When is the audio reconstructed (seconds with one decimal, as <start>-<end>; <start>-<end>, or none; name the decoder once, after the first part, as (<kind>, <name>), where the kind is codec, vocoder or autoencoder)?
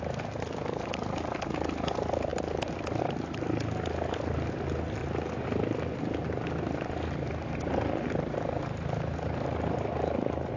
none